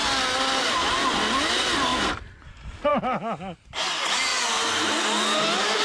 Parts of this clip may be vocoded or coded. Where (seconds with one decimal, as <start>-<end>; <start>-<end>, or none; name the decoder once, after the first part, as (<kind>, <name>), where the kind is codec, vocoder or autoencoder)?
none

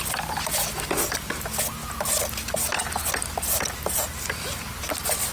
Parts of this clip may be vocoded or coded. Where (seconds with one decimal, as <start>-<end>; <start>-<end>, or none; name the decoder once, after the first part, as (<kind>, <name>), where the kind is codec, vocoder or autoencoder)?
none

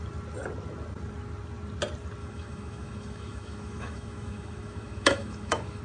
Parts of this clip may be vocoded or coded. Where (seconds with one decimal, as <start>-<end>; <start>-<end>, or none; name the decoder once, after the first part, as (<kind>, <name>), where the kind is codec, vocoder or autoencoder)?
2.2-5.8 (autoencoder, DAC-VAE)

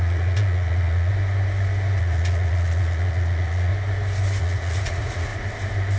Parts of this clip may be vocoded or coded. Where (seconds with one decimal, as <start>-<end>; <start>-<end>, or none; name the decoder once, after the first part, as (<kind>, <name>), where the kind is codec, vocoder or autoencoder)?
0.0-1.1 (vocoder, Vocos); 2.0-3.7; 4.4-5.3

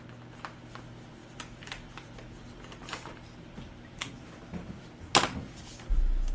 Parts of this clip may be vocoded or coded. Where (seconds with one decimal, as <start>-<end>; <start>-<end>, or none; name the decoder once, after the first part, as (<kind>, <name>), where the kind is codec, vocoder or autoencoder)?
1.2-5.0 (vocoder, BigVGAN v2)

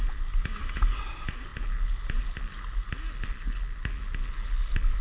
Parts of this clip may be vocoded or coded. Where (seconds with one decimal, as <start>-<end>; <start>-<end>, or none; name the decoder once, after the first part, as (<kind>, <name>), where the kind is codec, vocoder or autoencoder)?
none

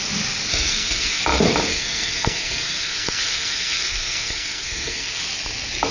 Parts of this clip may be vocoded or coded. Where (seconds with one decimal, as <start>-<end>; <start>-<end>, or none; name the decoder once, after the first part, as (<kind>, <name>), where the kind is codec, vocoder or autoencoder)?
0.5-1.2 (codec, SNAC); 1.7-5.2

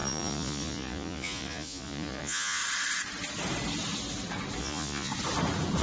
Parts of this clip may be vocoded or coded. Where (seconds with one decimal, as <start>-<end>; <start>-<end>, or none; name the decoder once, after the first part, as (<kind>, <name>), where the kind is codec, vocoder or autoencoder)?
0.0-2.6 (vocoder, Vocos); 4.6-5.1